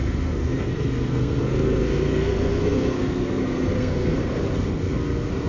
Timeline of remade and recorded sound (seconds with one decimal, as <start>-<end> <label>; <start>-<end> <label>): 0.0-5.5 remade